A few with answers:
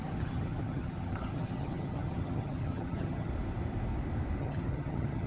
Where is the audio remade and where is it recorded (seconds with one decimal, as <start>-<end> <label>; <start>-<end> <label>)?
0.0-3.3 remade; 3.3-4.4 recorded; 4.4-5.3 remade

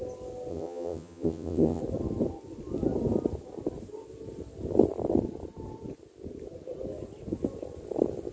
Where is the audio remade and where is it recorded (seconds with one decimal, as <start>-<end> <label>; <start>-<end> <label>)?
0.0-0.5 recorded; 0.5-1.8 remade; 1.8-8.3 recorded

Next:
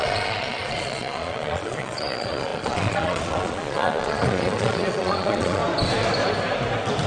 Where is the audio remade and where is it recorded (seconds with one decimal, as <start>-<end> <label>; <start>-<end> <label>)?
0.0-5.6 remade; 5.6-7.1 recorded

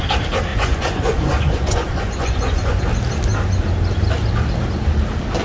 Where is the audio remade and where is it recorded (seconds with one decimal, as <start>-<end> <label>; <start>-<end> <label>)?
0.0-0.5 recorded; 0.5-2.8 remade; 2.8-5.4 recorded

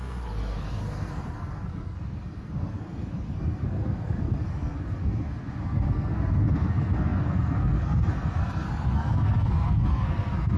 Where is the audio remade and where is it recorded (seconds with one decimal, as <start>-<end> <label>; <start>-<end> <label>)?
0.0-10.6 remade